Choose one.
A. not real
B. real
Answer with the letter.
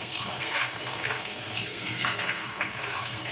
A